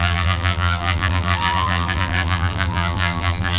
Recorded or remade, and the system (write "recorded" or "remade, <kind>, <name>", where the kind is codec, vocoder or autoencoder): remade, vocoder, BigVGAN v2